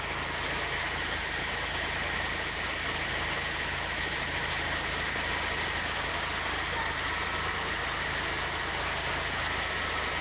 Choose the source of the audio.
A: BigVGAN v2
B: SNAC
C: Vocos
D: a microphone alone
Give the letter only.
D